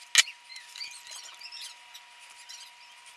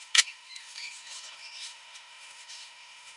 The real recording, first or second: first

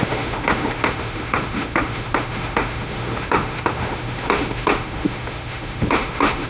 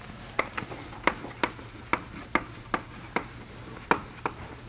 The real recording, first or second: second